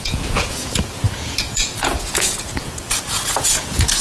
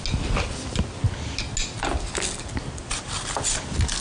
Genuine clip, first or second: second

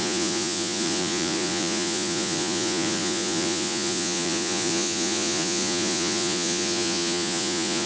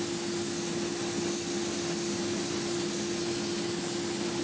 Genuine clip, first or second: second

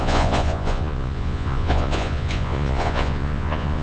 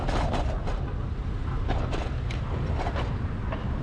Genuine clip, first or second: second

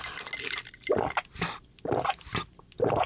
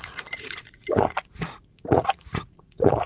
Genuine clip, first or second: first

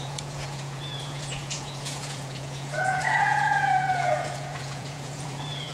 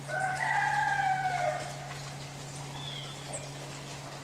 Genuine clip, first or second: second